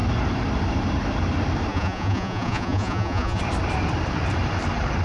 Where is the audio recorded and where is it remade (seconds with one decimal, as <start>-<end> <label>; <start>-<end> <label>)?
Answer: 0.0-1.7 recorded; 1.7-3.4 remade; 3.4-5.0 recorded